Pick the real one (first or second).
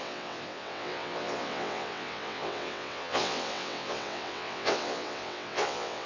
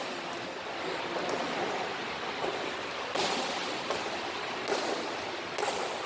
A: second